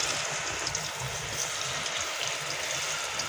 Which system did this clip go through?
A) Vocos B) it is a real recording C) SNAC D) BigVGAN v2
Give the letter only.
B